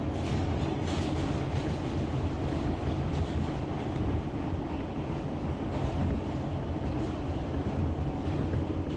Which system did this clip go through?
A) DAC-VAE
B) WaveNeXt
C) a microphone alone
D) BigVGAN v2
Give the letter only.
C